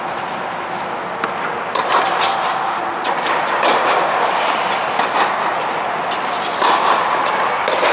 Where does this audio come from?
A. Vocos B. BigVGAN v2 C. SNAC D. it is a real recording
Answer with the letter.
D